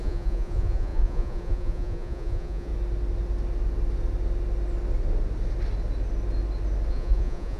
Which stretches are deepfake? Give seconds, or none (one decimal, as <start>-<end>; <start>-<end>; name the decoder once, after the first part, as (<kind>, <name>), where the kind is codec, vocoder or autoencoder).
0.0-2.7 (vocoder, Vocos); 6.9-7.6